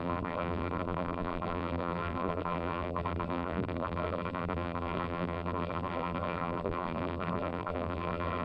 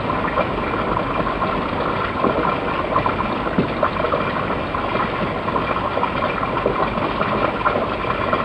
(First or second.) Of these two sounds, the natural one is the second